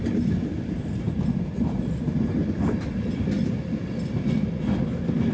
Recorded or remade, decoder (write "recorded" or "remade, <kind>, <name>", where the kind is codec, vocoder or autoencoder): recorded